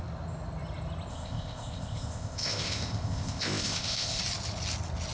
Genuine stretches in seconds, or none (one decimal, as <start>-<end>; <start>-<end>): 0.0-1.1; 4.2-5.1